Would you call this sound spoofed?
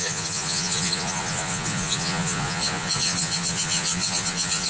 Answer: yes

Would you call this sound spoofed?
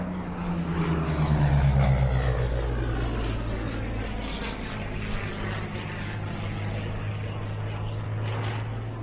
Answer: no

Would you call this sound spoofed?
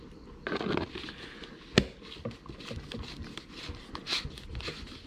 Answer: no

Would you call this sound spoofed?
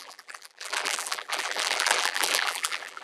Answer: yes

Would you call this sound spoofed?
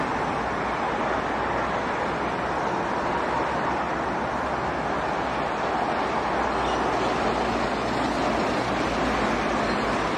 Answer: no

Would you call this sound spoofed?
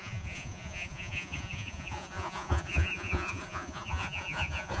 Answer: yes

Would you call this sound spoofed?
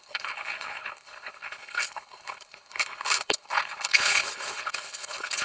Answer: yes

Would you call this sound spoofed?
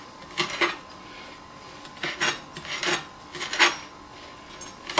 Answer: no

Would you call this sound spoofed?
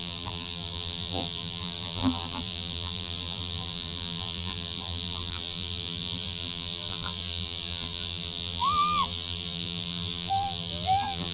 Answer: yes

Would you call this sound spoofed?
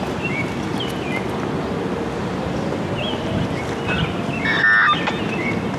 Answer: no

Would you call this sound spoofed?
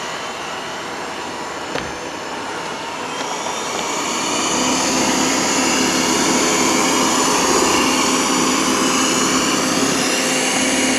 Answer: no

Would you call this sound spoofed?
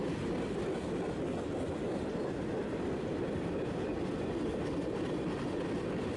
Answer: no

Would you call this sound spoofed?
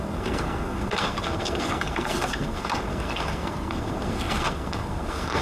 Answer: yes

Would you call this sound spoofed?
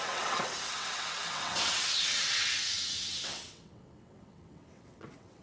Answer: yes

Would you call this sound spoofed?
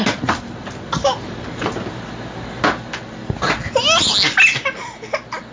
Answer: no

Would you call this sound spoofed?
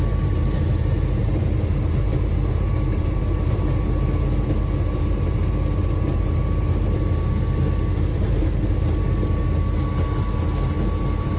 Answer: no